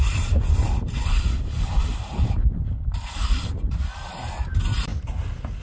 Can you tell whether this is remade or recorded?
recorded